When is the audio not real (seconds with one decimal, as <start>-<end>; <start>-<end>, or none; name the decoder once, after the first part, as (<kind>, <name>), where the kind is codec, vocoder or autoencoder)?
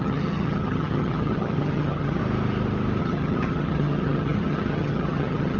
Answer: 0.0-2.2 (vocoder, HiFi-GAN); 3.0-5.6